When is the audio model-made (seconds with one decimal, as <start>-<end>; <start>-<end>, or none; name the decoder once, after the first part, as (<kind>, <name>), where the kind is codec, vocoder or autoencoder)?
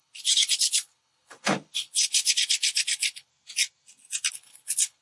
0.0-3.3 (codec, HILCodec); 4.3-5.0